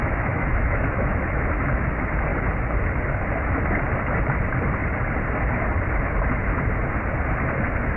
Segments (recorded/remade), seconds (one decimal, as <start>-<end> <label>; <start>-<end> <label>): 0.0-1.5 remade; 1.5-8.0 recorded